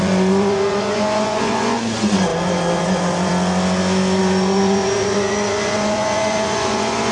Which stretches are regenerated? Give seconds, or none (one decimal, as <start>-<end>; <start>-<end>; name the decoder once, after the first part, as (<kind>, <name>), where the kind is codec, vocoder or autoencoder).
0.0-3.3 (vocoder, Vocos); 4.2-7.1